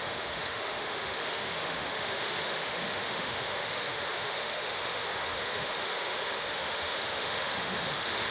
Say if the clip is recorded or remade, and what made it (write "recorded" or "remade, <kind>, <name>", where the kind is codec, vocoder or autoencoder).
remade, autoencoder, DAC-VAE